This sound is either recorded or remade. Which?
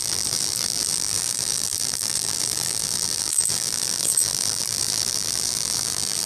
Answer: remade